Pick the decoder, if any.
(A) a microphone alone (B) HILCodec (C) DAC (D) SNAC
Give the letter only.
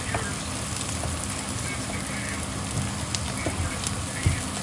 A